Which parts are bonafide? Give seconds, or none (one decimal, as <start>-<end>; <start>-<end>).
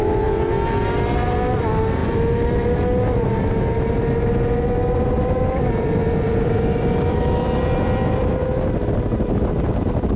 0.0-2.0; 2.8-4.8; 8.5-10.2